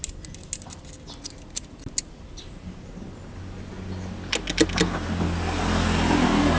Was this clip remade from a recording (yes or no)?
no